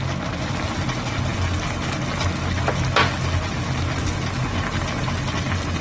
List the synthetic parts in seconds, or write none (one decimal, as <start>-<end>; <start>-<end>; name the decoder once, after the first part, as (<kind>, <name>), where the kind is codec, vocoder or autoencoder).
none